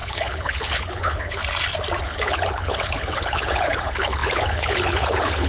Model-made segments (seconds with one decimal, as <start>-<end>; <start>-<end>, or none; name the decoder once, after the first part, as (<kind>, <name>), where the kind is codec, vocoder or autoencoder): 0.0-1.4 (codec, HILCodec); 2.0-5.5